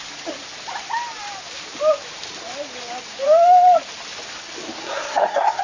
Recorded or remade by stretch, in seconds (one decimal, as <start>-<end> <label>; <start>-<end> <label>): 0.0-4.8 recorded; 4.8-5.6 remade